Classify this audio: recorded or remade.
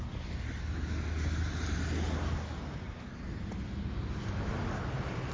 recorded